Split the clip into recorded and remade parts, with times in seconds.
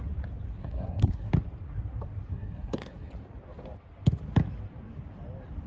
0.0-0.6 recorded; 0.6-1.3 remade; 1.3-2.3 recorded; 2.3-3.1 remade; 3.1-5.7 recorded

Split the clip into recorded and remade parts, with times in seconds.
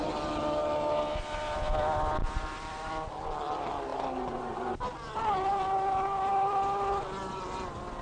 0.0-2.2 recorded; 2.2-2.9 remade; 2.9-8.0 recorded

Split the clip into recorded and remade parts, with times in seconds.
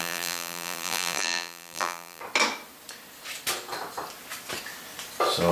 0.0-2.2 remade; 2.2-5.5 recorded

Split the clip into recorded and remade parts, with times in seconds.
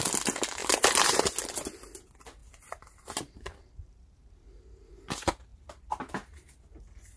0.0-0.6 recorded; 0.6-1.2 remade; 1.2-2.4 recorded; 2.4-4.6 remade; 4.6-5.5 recorded; 5.5-6.1 remade; 6.1-7.2 recorded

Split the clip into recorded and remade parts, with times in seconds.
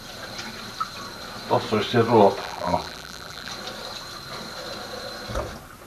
0.0-2.4 recorded; 2.4-3.5 remade; 3.5-5.9 recorded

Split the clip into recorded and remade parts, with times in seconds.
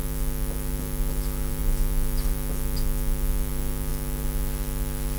0.0-5.2 recorded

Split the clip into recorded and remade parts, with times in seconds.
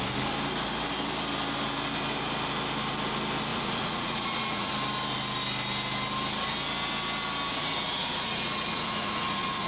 0.0-3.5 recorded; 3.5-4.7 remade; 4.7-7.5 recorded; 7.5-9.7 remade